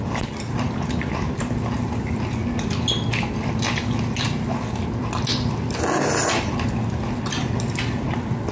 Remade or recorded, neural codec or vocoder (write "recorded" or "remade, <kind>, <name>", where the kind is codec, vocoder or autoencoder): recorded